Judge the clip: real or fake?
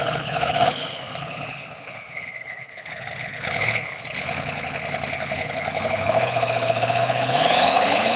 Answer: fake